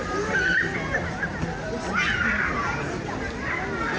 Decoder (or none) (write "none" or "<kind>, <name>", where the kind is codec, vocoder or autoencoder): none